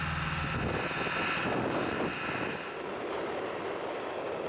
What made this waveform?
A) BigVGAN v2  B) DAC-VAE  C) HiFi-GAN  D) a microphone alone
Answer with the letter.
D